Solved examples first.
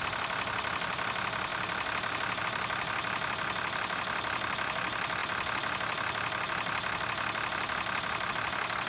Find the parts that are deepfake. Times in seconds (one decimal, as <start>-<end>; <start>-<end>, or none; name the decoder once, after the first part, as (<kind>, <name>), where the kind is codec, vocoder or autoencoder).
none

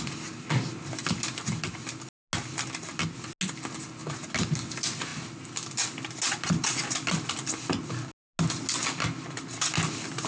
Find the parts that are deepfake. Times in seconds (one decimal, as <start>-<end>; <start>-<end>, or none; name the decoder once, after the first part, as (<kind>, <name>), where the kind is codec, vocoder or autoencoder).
none

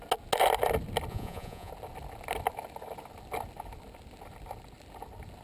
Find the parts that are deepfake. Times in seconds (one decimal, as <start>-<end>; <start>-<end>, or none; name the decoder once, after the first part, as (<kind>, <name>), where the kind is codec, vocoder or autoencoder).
1.1-1.7 (vocoder, Vocos)

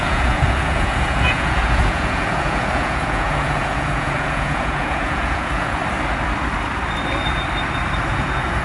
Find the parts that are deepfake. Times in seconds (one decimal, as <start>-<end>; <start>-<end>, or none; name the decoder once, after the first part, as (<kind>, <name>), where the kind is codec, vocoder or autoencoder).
0.0-5.8 (vocoder, Vocos); 8.1-8.6

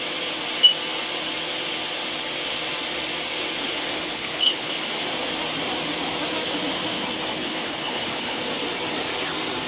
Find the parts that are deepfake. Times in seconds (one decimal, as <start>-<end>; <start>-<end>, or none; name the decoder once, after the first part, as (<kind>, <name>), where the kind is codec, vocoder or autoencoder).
3.9-4.9 (codec, HILCodec); 7.4-8.4

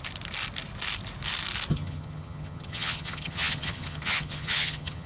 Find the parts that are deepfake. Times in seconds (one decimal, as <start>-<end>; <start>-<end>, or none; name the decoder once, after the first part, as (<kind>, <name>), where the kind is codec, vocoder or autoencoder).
1.7-5.1 (vocoder, HiFi-GAN)

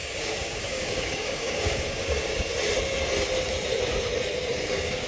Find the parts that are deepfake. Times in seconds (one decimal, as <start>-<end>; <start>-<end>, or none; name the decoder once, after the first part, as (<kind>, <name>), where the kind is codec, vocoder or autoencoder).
0.0-2.5 (codec, DAC); 4.6-5.1